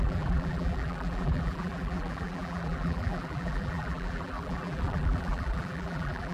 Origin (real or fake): fake